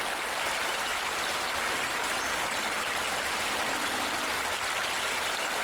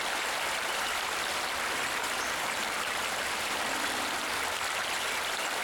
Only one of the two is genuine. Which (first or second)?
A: first